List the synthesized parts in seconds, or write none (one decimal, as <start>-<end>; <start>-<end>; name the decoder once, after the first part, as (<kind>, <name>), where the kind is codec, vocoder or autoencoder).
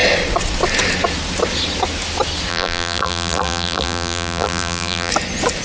2.5-5.1 (vocoder, BigVGAN v2)